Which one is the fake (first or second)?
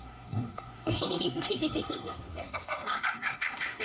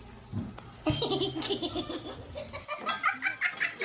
first